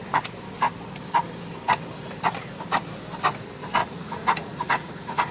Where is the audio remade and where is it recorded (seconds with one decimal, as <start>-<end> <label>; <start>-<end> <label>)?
0.0-3.8 recorded; 3.8-5.3 remade